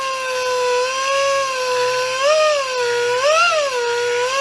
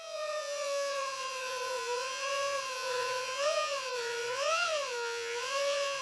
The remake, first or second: second